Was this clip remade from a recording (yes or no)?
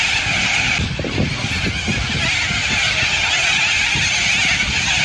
no